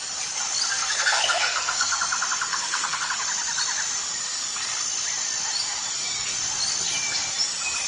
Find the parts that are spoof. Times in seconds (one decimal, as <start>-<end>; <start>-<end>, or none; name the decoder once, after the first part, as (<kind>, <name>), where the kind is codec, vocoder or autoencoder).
0.7-2.0 (codec, SNAC); 2.5-3.1